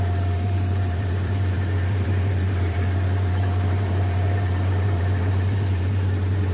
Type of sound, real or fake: fake